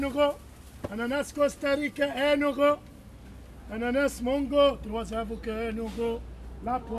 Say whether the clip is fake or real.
real